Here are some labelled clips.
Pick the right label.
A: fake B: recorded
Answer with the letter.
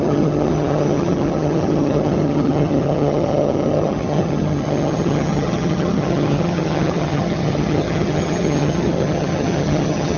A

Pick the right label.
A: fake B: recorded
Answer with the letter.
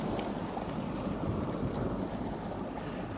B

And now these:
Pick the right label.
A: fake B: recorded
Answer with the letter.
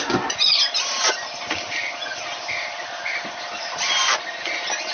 B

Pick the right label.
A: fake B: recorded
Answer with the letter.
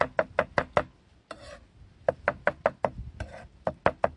B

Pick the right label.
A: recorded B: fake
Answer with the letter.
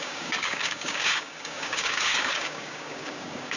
B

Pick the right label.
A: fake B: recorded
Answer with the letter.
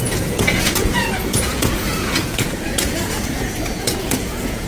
A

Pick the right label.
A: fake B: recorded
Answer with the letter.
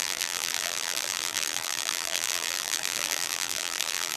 A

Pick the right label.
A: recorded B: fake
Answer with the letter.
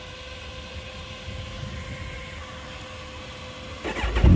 A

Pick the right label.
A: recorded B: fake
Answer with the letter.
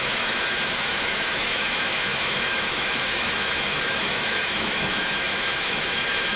B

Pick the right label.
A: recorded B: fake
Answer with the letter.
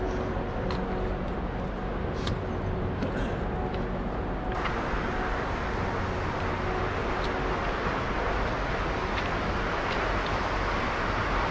A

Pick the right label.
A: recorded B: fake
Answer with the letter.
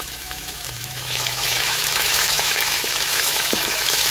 B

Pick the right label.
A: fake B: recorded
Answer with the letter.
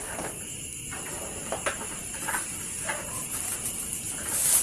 A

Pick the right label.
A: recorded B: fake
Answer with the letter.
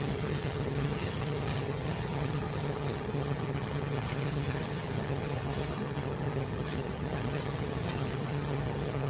B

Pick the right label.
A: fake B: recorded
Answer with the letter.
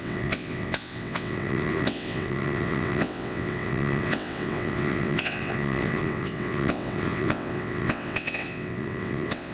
A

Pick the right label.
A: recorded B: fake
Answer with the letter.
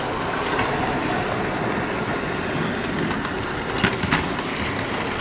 A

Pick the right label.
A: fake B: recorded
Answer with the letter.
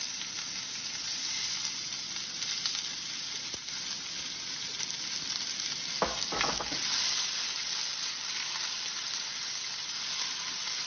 B